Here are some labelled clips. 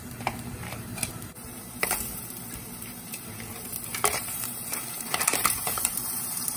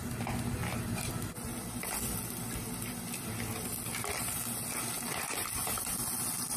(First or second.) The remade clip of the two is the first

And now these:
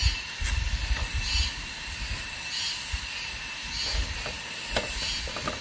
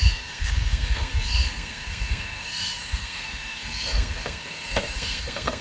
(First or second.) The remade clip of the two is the second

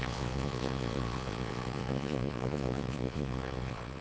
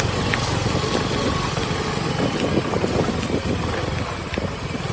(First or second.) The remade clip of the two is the first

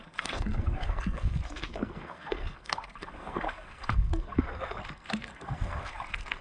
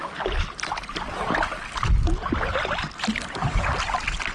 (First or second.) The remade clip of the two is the first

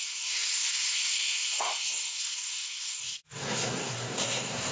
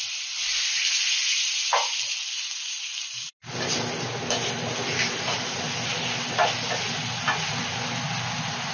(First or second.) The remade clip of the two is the first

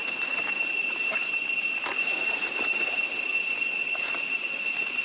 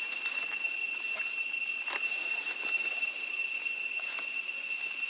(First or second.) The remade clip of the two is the first